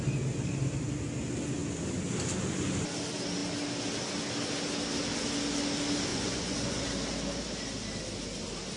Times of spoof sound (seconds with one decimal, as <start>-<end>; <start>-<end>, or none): 6.1-6.8